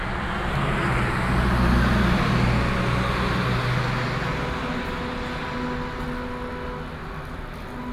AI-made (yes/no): no